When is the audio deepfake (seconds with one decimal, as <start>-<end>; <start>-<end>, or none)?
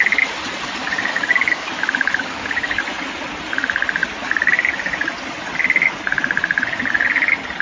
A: 1.1-2.8